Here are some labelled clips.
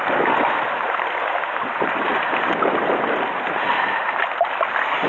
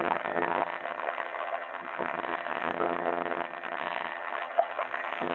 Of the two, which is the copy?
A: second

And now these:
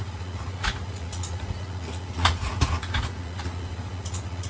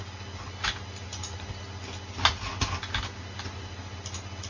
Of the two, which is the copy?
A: first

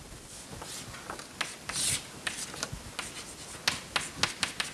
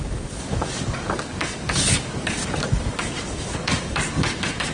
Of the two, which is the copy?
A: second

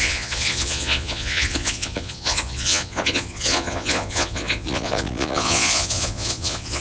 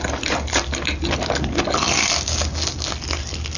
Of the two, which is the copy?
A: first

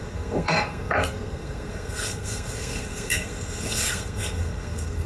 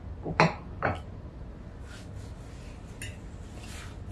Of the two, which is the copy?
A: first